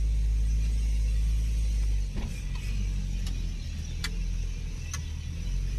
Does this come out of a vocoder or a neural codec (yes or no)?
no